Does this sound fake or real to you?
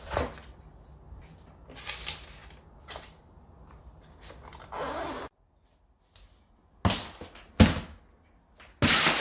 real